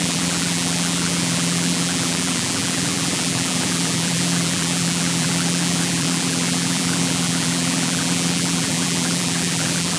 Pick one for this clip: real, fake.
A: fake